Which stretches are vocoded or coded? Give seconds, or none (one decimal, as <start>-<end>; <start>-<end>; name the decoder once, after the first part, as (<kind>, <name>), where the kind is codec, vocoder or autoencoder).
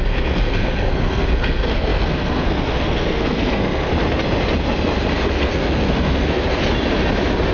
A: 0.0-3.9 (codec, SNAC); 5.4-6.6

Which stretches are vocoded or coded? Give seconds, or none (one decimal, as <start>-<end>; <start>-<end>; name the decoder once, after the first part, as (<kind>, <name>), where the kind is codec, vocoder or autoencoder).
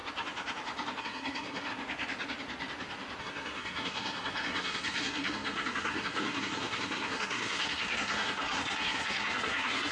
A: 1.0-1.7 (codec, SNAC); 3.2-9.9